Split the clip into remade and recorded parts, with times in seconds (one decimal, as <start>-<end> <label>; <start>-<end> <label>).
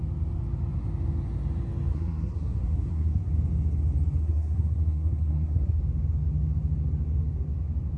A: 0.0-1.9 recorded; 1.9-3.3 remade; 3.3-4.2 recorded; 4.2-5.8 remade; 5.8-8.0 recorded